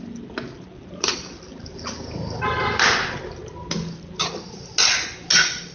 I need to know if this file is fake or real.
real